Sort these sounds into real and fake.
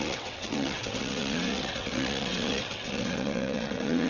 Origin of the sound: fake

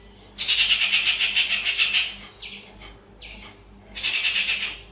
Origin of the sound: real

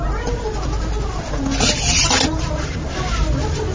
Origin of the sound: real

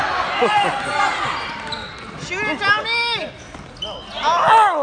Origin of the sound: real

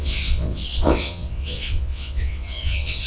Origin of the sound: fake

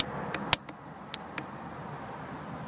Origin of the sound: real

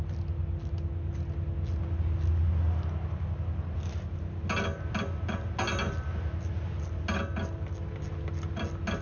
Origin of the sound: real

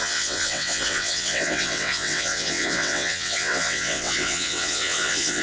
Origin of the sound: fake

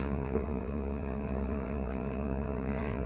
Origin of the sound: fake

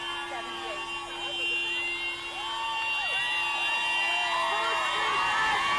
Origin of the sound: real